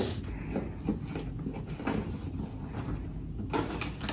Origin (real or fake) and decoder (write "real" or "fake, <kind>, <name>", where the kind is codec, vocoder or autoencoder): real